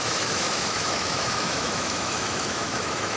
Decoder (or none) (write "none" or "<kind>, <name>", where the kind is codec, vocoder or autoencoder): autoencoder, DAC-VAE